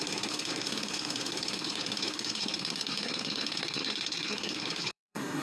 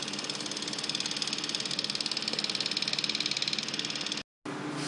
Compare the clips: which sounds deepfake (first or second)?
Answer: first